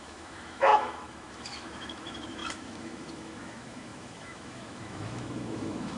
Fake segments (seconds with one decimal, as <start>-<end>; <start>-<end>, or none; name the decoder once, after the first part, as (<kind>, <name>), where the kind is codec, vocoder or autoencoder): 0.0-6.0 (autoencoder, DAC-VAE)